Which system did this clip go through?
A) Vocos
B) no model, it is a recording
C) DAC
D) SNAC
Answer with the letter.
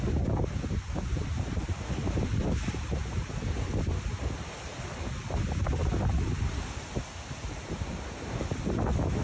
B